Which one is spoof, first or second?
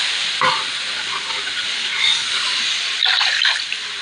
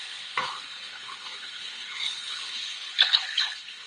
second